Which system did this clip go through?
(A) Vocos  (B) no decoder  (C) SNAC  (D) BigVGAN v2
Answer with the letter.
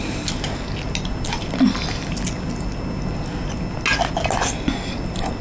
B